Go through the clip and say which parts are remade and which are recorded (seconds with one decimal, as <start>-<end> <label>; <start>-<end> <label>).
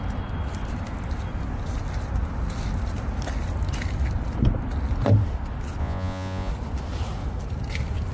0.0-5.8 recorded; 5.8-6.5 remade; 6.5-8.1 recorded